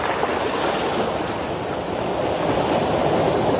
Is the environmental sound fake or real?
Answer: real